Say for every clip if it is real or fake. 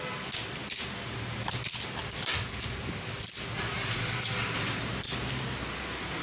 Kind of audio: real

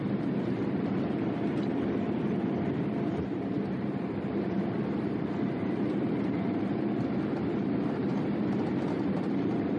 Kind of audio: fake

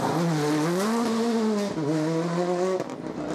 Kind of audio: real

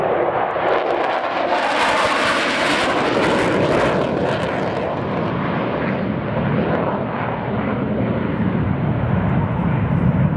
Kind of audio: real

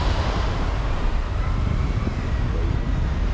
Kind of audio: fake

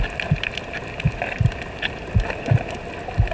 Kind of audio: real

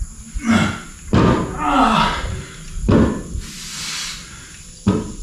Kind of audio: real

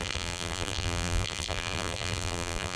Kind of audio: fake